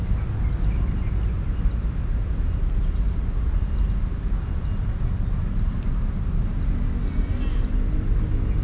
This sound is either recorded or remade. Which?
recorded